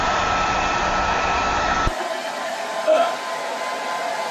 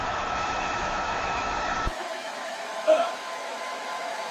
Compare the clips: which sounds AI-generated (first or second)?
second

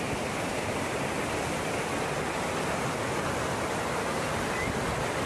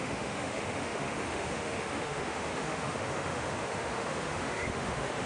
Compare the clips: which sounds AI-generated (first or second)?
second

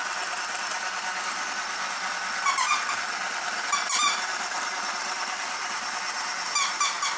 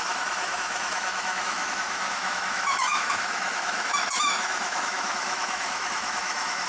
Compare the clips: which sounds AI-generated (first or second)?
second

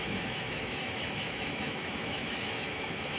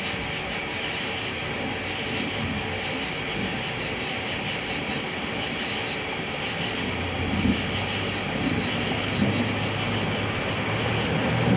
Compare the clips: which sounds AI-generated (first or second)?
first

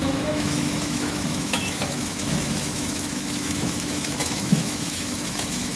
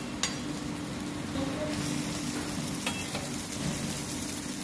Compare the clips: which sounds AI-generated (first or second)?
first